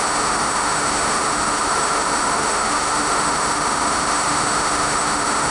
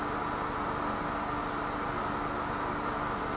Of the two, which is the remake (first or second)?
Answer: first